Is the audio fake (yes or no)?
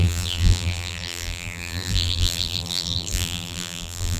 yes